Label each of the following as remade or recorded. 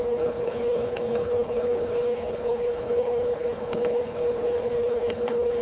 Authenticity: remade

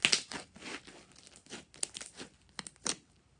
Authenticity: recorded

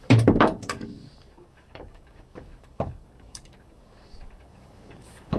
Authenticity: remade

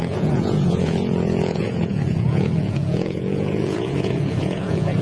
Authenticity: remade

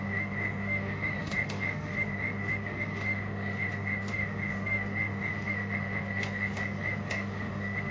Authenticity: remade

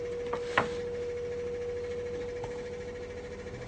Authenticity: recorded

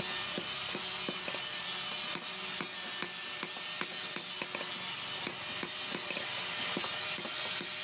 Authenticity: recorded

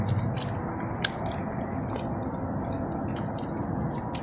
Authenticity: recorded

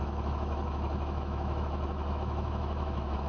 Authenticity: remade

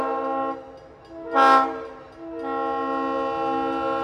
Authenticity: recorded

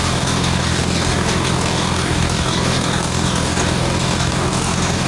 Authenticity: remade